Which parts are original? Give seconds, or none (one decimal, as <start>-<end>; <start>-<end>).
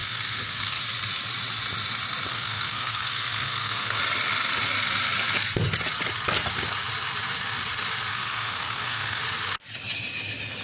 0.8-2.3; 4.0-8.1; 9.2-10.6